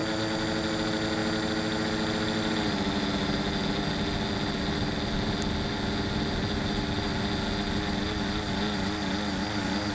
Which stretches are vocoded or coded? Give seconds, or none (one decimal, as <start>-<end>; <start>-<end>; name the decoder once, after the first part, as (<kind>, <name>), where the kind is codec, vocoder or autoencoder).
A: none